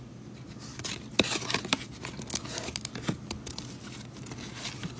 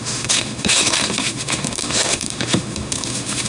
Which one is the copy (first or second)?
second